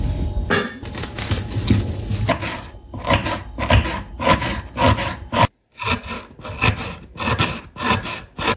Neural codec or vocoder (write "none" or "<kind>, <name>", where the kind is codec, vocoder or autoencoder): none